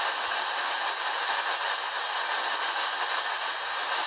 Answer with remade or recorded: recorded